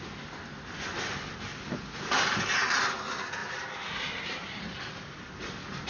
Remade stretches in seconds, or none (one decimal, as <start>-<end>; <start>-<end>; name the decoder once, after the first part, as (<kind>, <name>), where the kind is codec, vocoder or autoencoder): 3.4-5.3 (vocoder, BigVGAN v2)